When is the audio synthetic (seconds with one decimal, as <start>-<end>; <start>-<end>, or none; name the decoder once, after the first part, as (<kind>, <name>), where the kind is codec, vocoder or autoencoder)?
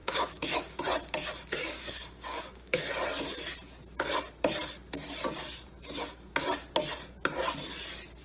0.0-0.8 (codec, DAC); 1.5-2.9